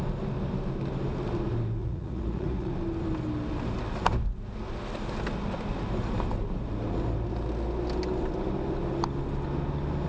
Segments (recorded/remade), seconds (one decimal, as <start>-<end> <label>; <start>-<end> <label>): 0.0-1.8 recorded; 1.8-2.7 remade; 2.7-10.1 recorded